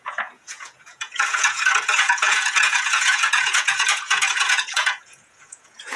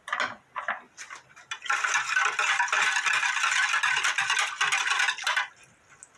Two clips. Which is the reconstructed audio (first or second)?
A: first